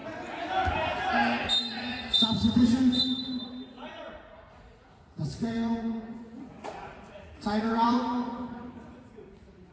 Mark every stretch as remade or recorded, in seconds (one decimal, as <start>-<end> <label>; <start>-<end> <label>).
0.0-1.7 recorded; 1.7-9.7 remade